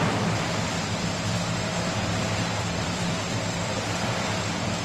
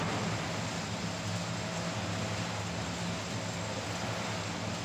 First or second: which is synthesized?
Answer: first